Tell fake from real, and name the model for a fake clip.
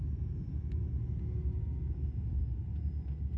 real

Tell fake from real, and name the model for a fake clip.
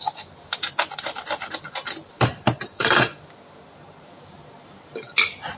real